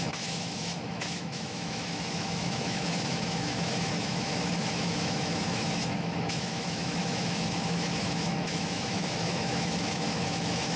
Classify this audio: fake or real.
fake